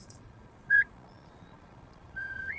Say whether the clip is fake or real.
fake